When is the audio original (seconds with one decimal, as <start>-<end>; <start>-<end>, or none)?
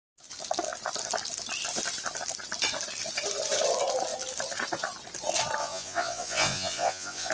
0.0-5.6